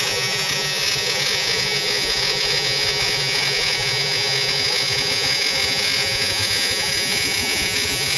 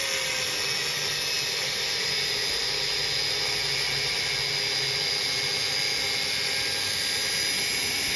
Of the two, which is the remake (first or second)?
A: first